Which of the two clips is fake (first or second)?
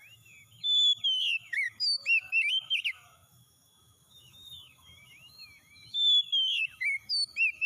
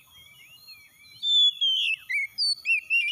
first